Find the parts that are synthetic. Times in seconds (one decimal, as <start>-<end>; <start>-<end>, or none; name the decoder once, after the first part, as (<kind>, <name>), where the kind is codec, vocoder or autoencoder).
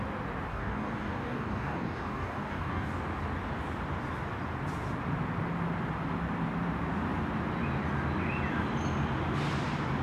0.5-2.9 (codec, DAC)